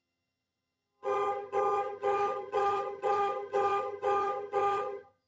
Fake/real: fake